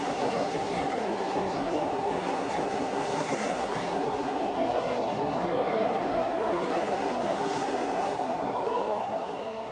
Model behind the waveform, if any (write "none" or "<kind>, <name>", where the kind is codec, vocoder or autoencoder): codec, SNAC